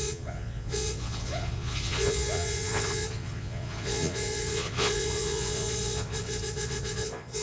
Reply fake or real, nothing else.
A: fake